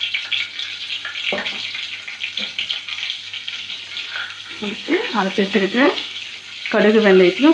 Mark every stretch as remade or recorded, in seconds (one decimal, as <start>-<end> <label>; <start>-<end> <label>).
0.0-3.2 recorded; 3.2-3.7 remade; 3.7-4.2 recorded; 4.2-6.2 remade; 6.2-7.5 recorded